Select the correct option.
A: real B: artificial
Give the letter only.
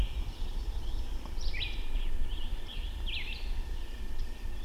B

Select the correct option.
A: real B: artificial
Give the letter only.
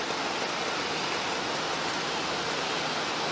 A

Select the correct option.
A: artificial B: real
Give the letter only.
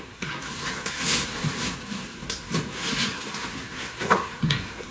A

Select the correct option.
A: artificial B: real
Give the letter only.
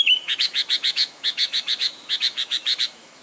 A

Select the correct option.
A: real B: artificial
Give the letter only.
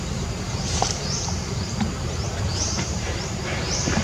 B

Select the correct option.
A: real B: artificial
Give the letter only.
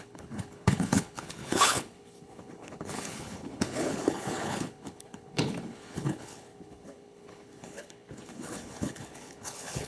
B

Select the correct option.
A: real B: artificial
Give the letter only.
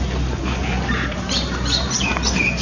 B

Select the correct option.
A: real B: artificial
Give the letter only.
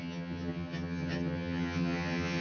B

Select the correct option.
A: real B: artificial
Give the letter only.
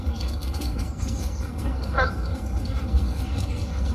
B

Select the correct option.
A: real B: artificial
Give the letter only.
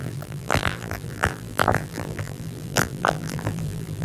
B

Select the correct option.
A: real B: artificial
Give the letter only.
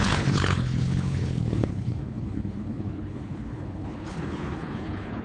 B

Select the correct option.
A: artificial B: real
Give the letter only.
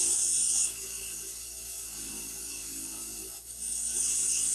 A